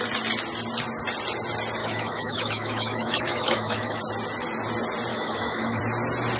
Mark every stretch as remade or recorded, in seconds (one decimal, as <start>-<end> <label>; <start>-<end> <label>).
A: 0.0-1.8 recorded; 1.8-4.0 remade; 4.0-5.1 recorded; 5.1-5.8 remade; 5.8-6.4 recorded